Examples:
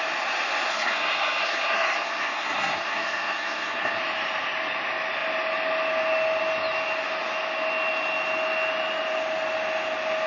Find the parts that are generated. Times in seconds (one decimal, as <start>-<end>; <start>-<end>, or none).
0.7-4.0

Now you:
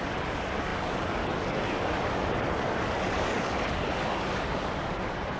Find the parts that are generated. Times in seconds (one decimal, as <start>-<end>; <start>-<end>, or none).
0.0-5.4

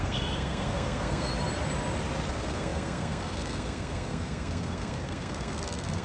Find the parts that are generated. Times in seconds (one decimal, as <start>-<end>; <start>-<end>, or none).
0.0-1.3; 2.3-6.0

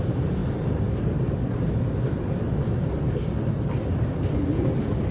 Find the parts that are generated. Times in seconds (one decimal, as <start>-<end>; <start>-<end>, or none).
none

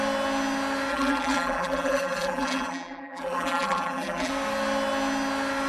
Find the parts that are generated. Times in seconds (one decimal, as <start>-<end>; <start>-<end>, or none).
0.9-4.3